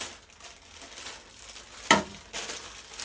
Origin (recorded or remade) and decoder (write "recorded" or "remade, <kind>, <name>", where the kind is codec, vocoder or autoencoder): recorded